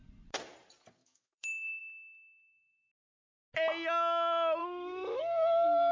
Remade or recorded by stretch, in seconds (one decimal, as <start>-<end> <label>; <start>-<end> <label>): 0.0-1.0 recorded; 1.0-1.8 remade; 1.8-4.6 recorded; 4.6-5.2 remade; 5.2-5.9 recorded